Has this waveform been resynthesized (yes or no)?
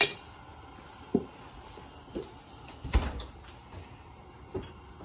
no